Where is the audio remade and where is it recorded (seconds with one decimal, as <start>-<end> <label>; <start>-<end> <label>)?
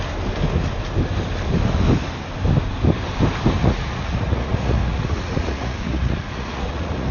0.0-3.6 recorded; 3.6-7.1 remade